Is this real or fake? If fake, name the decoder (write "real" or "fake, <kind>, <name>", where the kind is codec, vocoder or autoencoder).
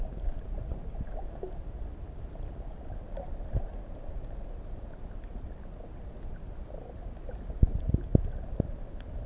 real